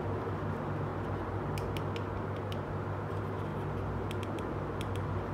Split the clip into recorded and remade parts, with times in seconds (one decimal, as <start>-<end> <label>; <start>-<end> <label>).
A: 0.0-5.3 recorded